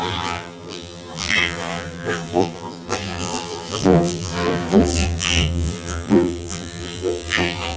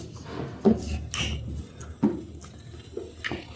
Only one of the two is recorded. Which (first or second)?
second